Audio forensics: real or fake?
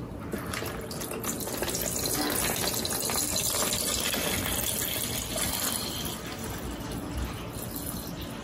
real